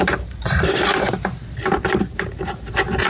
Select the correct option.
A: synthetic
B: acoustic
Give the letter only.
A